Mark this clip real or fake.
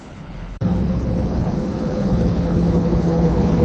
fake